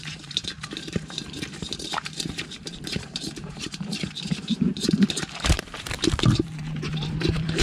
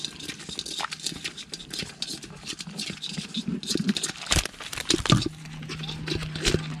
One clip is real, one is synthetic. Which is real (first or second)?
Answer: second